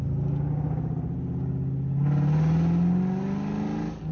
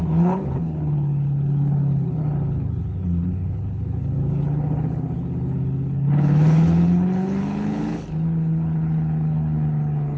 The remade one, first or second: second